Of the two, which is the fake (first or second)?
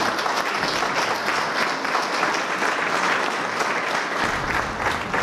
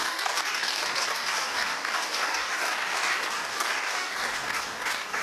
second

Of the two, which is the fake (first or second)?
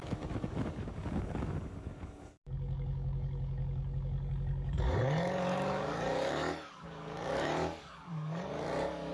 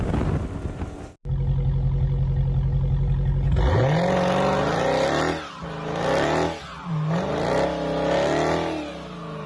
first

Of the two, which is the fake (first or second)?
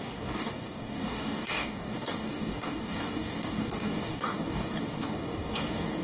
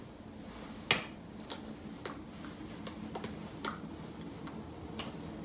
first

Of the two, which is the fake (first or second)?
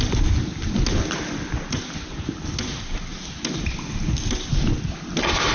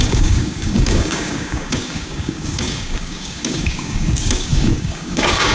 second